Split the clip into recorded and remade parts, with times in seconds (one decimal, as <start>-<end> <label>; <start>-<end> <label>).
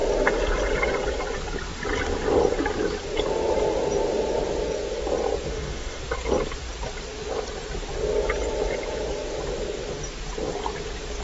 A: 0.0-5.5 recorded; 5.5-6.0 remade; 6.0-11.2 recorded